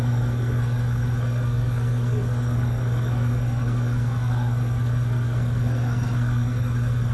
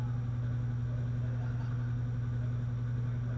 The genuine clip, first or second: second